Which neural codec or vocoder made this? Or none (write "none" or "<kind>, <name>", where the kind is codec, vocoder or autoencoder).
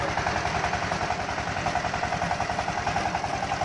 none